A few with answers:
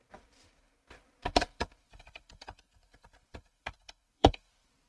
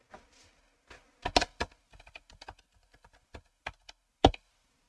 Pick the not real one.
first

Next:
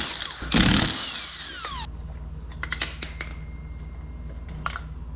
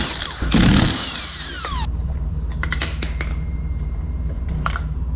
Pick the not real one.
second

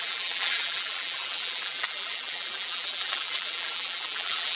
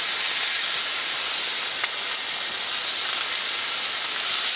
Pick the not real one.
first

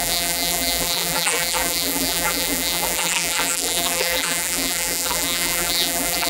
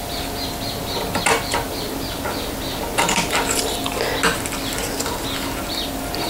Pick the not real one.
first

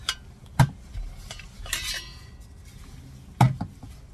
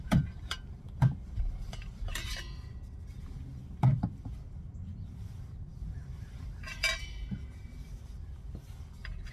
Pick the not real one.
second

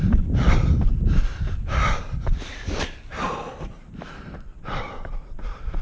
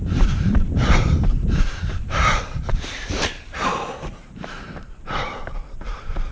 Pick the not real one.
second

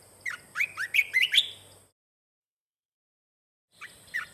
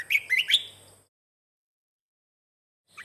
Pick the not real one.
first